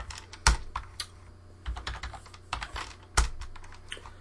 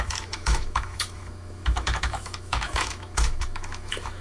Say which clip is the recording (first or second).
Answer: first